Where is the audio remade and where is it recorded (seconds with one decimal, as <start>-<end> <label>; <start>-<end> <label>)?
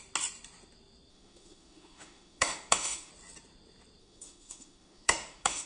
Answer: 0.0-1.1 recorded; 1.1-3.1 remade; 3.1-4.0 recorded; 4.0-5.7 remade